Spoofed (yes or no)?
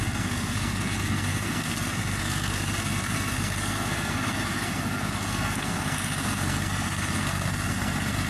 yes